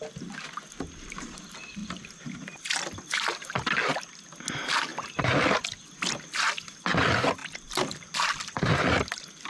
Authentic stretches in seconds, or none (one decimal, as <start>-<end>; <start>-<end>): 0.0-1.8; 2.6-7.4; 8.3-9.5